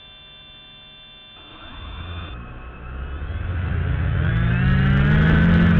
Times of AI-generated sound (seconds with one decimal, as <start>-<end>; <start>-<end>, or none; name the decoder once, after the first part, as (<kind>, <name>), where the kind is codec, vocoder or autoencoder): 1.5-2.3 (vocoder, Vocos); 3.5-4.3